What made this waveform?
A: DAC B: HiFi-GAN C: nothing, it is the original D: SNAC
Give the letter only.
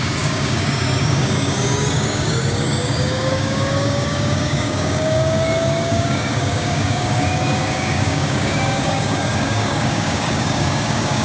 A